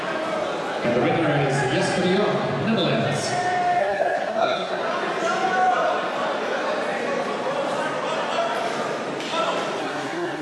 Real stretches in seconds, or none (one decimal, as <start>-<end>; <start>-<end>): 0.0-3.8; 4.8-9.8